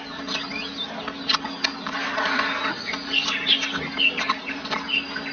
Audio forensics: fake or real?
real